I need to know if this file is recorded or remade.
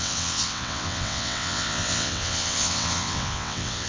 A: remade